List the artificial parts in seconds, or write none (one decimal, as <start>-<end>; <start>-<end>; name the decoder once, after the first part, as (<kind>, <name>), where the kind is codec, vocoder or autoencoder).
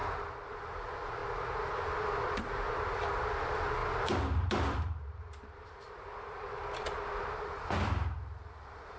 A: 0.5-1.2 (vocoder, BigVGAN v2); 1.7-3.8; 4.5-9.0